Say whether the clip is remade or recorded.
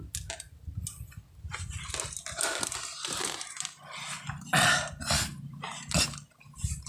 recorded